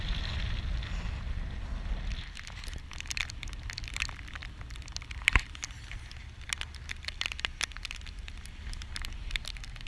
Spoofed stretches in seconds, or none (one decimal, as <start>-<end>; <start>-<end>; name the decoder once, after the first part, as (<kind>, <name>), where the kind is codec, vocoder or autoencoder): none